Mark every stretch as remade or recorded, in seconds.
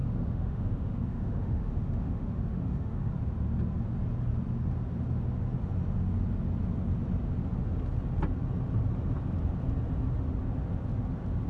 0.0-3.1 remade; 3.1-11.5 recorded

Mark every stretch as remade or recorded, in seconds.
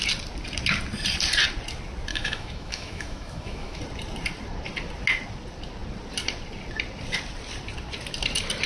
0.0-2.1 recorded; 2.1-3.8 remade; 3.8-8.7 recorded